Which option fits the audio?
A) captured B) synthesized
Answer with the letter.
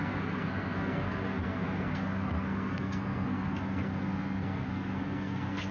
B